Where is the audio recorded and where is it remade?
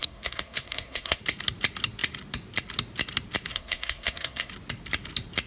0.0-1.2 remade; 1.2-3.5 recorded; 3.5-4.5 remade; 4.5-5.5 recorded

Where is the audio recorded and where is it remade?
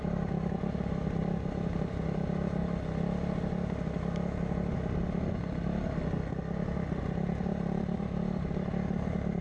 0.0-2.6 remade; 2.6-7.0 recorded; 7.0-9.4 remade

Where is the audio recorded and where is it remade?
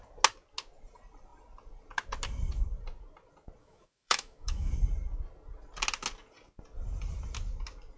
0.0-3.6 recorded; 3.6-4.7 remade; 4.7-8.0 recorded